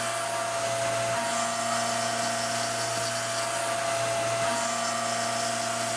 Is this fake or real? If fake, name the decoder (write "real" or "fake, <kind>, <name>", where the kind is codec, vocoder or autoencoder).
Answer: real